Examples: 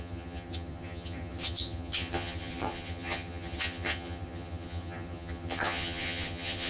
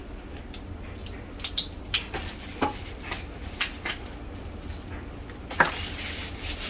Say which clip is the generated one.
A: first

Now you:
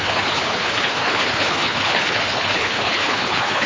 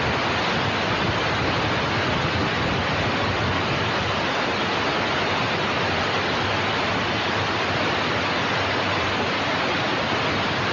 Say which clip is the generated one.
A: first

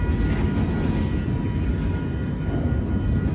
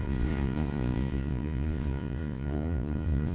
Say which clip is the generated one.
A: second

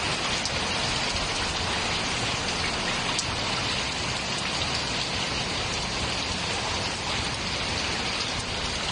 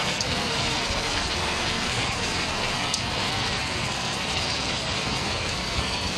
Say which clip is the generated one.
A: second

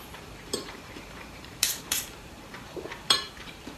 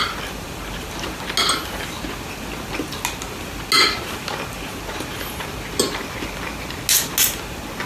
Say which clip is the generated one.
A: first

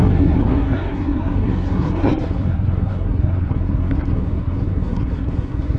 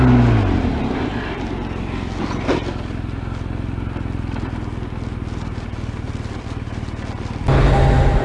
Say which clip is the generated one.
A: first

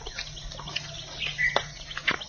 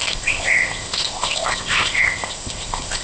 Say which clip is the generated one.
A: second